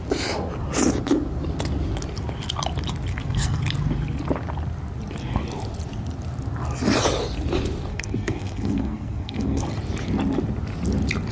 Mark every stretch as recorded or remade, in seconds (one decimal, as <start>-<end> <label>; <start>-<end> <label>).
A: 0.0-3.1 recorded; 3.1-3.6 remade; 3.6-7.9 recorded; 7.9-9.6 remade; 9.6-11.3 recorded